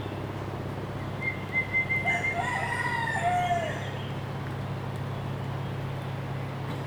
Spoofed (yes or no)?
no